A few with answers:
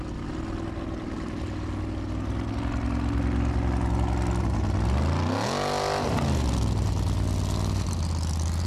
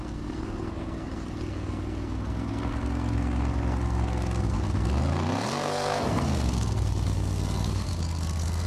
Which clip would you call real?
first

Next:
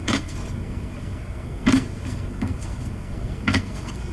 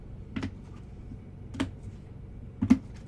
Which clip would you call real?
second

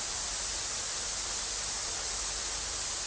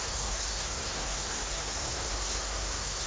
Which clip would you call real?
first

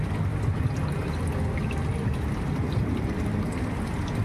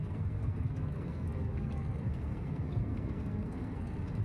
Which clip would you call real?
first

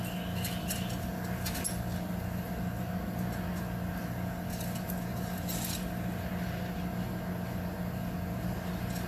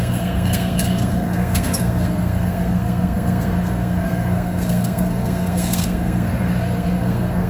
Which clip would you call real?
first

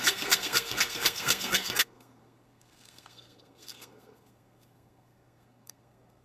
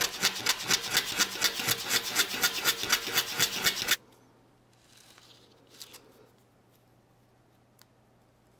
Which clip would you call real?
second